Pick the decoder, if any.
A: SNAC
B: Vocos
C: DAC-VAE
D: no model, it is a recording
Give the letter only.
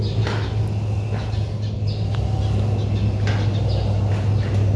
D